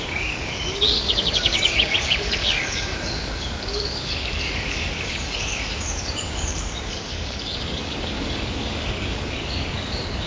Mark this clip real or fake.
fake